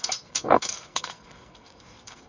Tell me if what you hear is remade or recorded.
remade